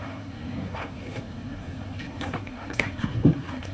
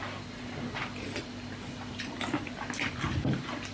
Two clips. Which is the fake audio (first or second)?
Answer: first